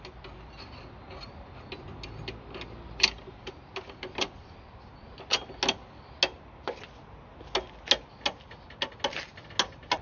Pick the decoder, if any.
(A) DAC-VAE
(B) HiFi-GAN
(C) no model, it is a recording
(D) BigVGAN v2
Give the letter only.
C